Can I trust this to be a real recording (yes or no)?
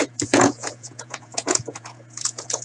no